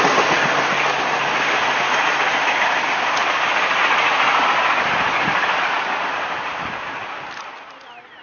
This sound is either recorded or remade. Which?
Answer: recorded